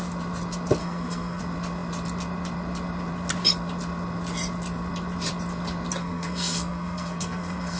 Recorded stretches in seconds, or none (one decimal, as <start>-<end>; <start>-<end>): 0.0-0.8; 1.4-6.0

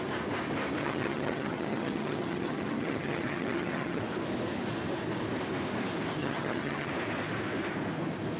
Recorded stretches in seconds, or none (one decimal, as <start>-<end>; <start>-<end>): 0.0-0.8; 4.0-6.2; 6.9-8.4

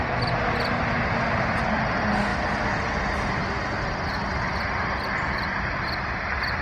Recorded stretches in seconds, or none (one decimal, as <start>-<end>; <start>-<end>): 0.0-6.6

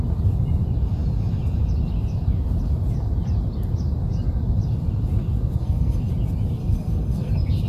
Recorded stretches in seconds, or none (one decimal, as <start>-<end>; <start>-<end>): 0.0-5.6; 6.1-6.6; 7.3-7.7

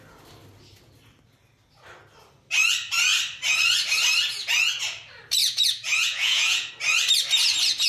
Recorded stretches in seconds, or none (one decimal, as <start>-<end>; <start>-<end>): 0.0-5.4; 6.7-7.9

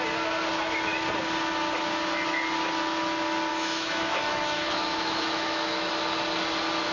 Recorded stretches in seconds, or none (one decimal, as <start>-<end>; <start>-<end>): 0.0-3.5; 5.9-6.9